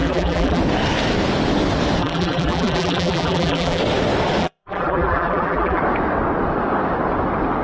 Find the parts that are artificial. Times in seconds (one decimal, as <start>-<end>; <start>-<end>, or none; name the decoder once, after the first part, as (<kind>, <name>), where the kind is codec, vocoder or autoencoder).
0.0-0.6 (vocoder, BigVGAN v2); 2.0-3.8; 4.4-5.8